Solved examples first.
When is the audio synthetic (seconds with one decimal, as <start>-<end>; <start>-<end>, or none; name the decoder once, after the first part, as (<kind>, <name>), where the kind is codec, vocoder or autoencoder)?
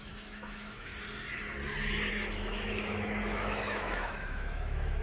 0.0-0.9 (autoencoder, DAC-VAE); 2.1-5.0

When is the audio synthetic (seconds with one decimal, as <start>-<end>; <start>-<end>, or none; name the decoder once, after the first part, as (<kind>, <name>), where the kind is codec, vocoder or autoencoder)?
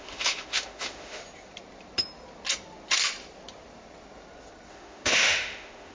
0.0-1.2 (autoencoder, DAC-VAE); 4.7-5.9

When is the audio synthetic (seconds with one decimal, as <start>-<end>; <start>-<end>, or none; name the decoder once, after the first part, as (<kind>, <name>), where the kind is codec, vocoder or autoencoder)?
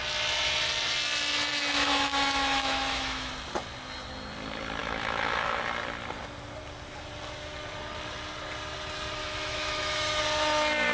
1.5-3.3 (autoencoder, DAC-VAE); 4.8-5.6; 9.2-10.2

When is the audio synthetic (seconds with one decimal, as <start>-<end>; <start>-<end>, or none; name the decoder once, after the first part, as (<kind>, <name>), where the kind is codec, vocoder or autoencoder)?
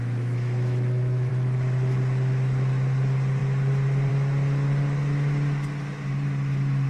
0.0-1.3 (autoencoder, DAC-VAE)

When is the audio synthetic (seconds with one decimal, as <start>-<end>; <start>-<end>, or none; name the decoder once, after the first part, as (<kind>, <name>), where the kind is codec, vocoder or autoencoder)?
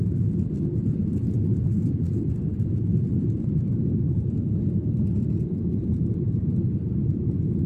none